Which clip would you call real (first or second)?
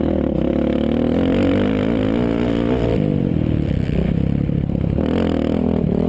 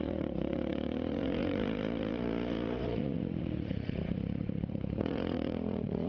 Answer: first